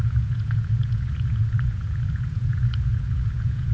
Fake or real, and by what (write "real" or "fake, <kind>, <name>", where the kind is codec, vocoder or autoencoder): fake, vocoder, Vocos